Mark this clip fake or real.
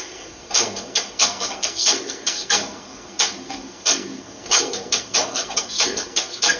fake